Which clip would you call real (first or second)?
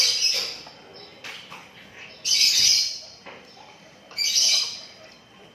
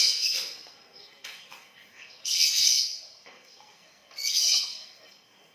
first